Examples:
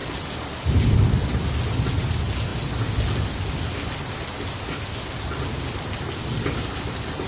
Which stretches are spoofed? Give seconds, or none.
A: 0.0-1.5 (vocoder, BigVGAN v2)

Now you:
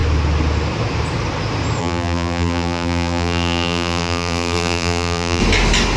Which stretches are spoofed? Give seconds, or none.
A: 1.8-5.4 (vocoder, BigVGAN v2)

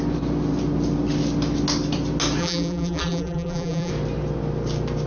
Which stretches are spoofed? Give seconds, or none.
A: 2.4-3.9 (vocoder, BigVGAN v2)

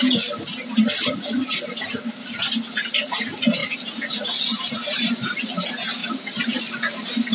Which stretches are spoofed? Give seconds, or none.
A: 3.6-5.5 (vocoder, BigVGAN v2); 6.0-6.7